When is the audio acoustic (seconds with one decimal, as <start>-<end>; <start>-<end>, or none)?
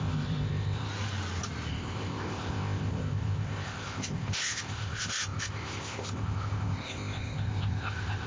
0.9-1.7